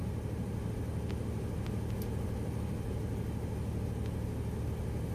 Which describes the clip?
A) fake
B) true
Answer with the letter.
B